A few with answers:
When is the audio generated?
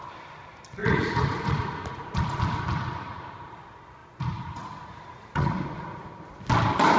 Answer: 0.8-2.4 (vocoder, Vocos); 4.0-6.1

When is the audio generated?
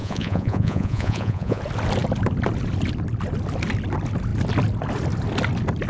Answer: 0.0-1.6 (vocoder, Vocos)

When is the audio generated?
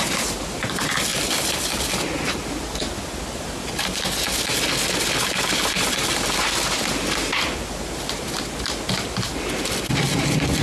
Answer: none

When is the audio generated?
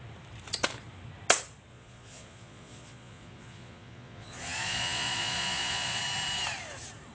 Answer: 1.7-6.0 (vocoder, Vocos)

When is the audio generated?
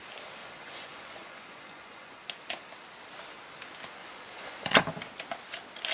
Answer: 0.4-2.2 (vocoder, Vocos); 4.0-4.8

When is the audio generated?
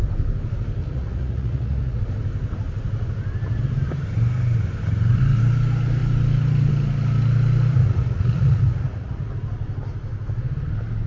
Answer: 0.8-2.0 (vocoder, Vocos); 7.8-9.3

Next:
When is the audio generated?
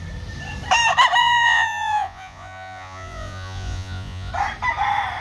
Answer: 1.2-4.3 (vocoder, Vocos)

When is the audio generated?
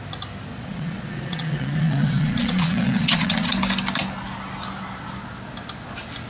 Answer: 0.5-3.5 (vocoder, Vocos)